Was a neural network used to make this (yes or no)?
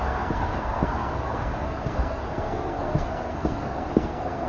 yes